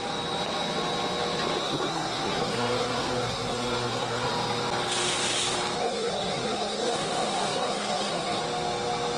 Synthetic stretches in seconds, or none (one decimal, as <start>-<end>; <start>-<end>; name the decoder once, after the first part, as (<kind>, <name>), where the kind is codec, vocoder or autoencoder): 1.6-4.3 (codec, SNAC); 5.8-8.4